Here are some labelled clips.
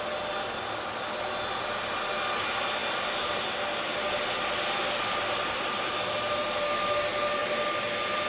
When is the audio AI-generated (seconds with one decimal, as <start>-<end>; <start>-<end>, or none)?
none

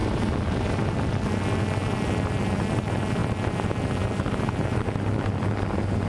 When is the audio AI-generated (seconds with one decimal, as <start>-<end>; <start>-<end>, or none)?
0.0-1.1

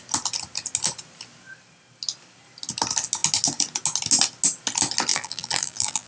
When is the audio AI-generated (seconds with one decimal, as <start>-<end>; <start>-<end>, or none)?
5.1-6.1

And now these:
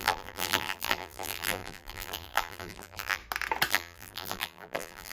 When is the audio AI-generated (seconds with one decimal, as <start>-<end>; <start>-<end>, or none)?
0.0-3.2; 3.7-5.1